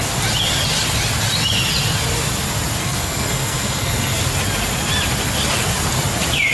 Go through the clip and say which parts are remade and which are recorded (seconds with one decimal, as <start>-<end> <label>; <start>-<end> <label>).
0.0-2.8 recorded; 2.8-4.2 remade; 4.2-6.5 recorded